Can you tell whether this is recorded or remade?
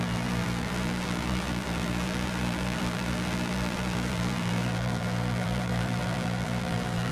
remade